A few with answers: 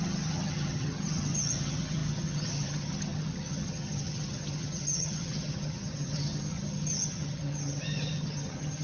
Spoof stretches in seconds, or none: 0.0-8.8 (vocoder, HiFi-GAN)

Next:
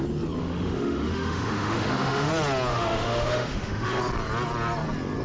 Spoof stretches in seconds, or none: 0.4-2.3 (autoencoder, DAC-VAE); 2.7-4.0

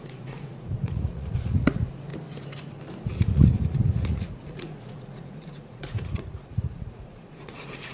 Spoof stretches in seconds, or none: 0.0-2.1 (vocoder, Vocos); 3.0-7.9

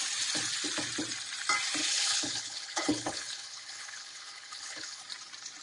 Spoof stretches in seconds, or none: 1.8-5.0 (codec, HILCodec)

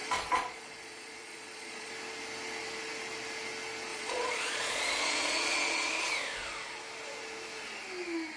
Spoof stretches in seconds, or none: 0.0-1.9 (vocoder, Vocos); 3.9-5.9

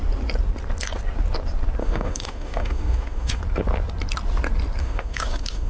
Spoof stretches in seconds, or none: 1.8-3.4 (autoencoder, DAC-VAE); 4.8-5.7

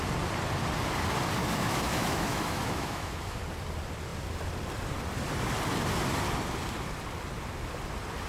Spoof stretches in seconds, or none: 1.4-3.4 (autoencoder, DAC-VAE)